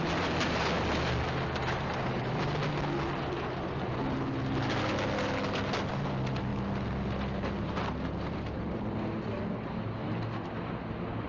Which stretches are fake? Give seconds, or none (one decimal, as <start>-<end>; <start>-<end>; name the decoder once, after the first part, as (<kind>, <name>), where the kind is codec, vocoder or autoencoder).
none